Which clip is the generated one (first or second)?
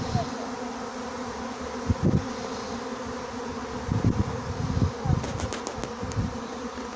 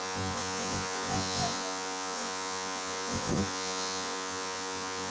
second